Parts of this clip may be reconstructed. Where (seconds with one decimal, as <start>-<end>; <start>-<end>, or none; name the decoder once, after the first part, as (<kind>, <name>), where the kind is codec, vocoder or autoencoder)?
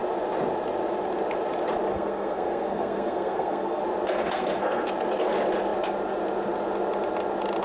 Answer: 1.9-3.8 (codec, SNAC); 4.2-4.9